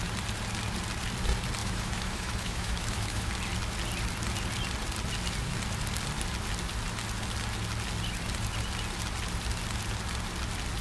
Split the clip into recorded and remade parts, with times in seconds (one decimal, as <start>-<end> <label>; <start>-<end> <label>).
0.0-1.6 recorded; 1.6-3.3 remade; 3.3-10.8 recorded